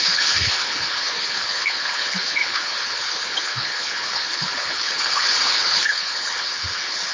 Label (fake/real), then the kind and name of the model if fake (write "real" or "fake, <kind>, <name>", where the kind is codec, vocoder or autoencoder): fake, codec, HILCodec